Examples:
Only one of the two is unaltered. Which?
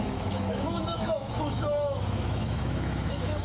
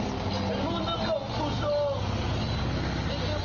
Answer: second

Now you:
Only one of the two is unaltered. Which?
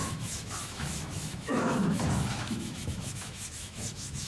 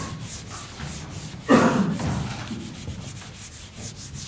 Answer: second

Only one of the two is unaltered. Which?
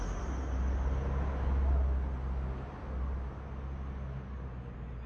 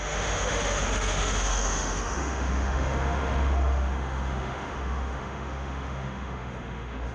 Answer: first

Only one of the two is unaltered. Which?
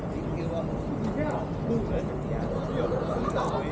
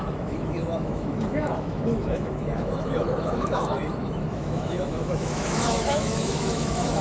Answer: first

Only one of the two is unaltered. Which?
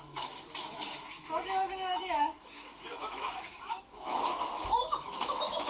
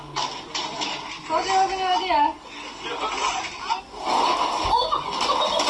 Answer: second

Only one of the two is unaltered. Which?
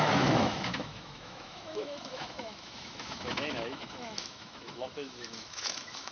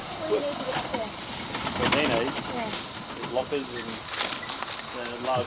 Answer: second